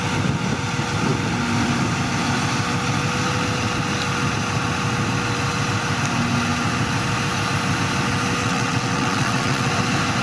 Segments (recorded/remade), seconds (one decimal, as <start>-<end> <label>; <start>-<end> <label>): 0.0-8.4 recorded; 8.4-9.7 remade; 9.7-10.2 recorded